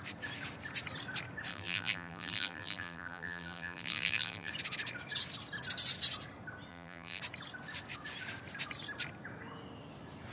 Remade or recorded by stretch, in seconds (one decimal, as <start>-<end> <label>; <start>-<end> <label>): 0.0-1.5 recorded; 1.5-4.5 remade; 4.5-6.7 recorded; 6.7-7.2 remade; 7.2-10.3 recorded